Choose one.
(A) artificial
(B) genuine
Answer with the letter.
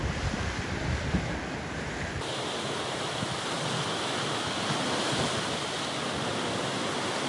B